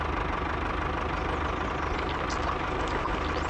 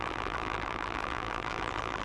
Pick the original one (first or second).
first